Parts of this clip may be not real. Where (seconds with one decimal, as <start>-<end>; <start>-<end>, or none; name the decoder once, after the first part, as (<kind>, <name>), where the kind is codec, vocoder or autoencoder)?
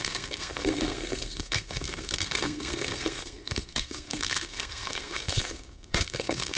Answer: 0.0-6.6 (codec, SNAC)